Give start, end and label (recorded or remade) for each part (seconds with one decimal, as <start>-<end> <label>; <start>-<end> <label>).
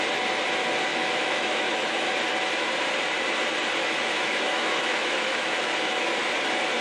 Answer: 0.0-0.9 recorded; 0.9-2.1 remade; 2.1-3.8 recorded; 3.8-6.2 remade; 6.2-6.8 recorded